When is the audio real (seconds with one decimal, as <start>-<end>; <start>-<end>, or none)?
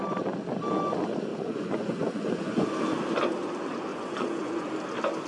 0.0-1.3; 2.7-3.9; 4.7-5.3